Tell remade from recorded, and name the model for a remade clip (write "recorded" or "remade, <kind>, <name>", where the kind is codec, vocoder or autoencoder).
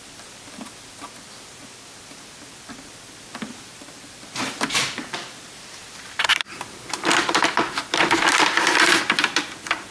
remade, vocoder, BigVGAN v2